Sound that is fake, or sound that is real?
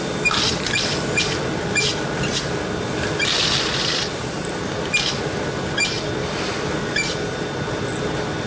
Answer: real